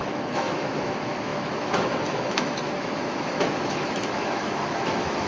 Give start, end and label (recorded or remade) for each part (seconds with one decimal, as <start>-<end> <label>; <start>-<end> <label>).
0.0-5.3 remade